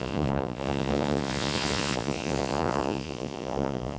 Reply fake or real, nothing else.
fake